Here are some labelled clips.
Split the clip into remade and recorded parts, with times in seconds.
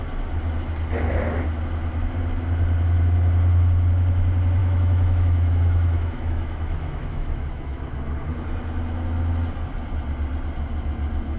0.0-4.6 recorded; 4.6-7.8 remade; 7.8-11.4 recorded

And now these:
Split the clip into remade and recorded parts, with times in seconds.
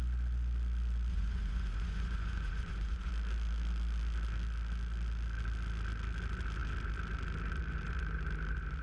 0.0-1.1 recorded; 1.1-3.1 remade; 3.1-8.8 recorded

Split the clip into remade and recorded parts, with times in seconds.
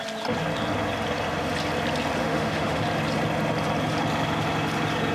0.0-2.2 recorded; 2.2-2.8 remade; 2.8-5.1 recorded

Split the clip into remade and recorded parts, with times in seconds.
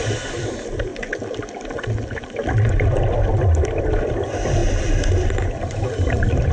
0.0-0.9 remade; 0.9-3.8 recorded; 3.8-4.6 remade; 4.6-6.1 recorded; 6.1-6.5 remade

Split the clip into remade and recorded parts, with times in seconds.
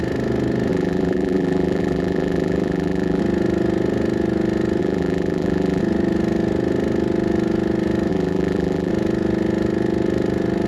0.0-0.7 recorded; 0.7-3.2 remade; 3.2-4.8 recorded; 4.8-5.8 remade; 5.8-8.1 recorded; 8.1-8.9 remade; 8.9-10.7 recorded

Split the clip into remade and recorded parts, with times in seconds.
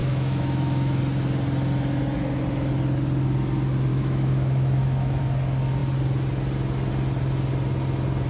0.0-1.0 remade; 1.0-3.9 recorded; 3.9-5.2 remade; 5.2-8.3 recorded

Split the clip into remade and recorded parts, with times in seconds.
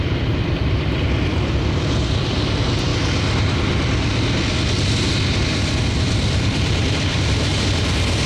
0.0-2.9 remade; 2.9-5.1 recorded; 5.1-8.3 remade